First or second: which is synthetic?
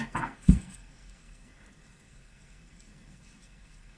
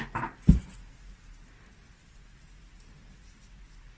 first